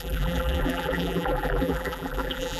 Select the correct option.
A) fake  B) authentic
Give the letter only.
A